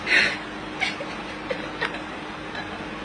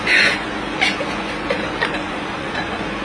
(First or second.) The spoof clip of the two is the second